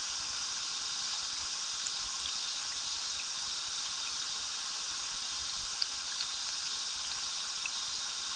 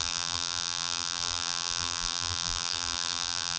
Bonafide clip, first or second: first